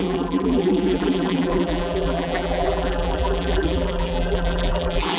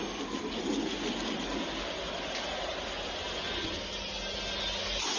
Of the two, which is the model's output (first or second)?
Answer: first